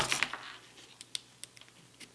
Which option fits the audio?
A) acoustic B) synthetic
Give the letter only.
A